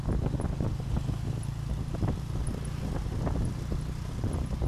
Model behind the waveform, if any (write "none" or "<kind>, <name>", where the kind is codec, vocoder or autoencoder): none